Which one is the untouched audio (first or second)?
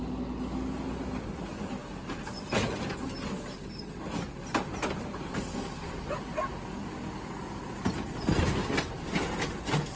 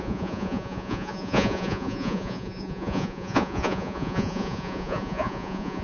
first